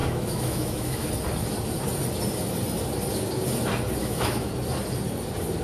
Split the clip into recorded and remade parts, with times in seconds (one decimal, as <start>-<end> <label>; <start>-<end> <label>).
0.0-1.1 remade; 1.1-4.0 recorded; 4.0-4.5 remade; 4.5-5.6 recorded